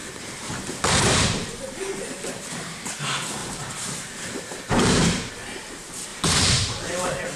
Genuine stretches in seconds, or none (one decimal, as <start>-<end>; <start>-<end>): 2.9-3.4; 5.3-6.1